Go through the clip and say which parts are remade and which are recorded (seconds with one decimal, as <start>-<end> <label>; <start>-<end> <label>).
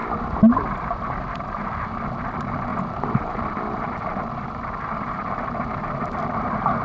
0.0-6.8 recorded